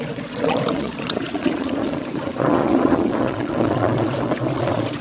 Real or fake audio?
fake